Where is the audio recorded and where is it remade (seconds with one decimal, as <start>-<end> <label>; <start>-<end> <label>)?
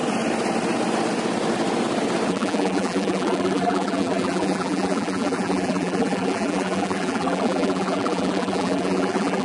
0.0-2.3 recorded; 2.3-9.4 remade